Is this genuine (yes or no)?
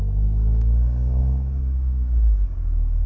no